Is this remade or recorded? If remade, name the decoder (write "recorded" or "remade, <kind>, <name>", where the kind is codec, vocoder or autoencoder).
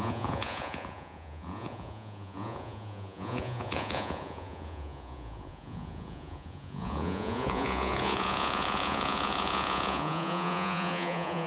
remade, vocoder, Vocos